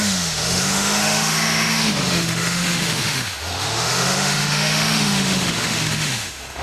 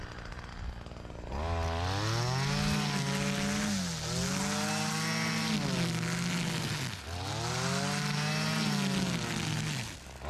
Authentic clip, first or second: second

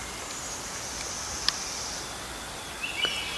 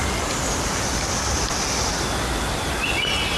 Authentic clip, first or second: first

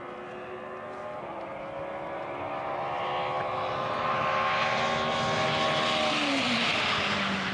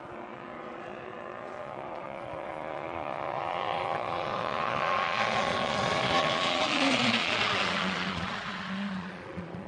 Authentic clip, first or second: first